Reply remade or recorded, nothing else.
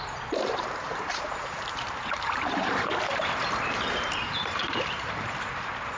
remade